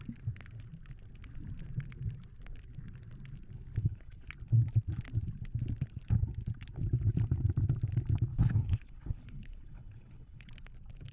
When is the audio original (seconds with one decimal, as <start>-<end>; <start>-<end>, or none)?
0.0-3.8; 4.3-8.3; 10.5-11.1